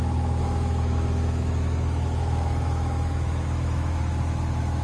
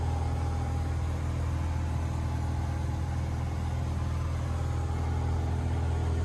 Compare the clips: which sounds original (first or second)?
second